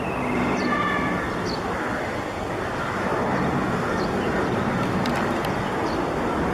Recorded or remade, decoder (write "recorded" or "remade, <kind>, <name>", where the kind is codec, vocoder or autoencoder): recorded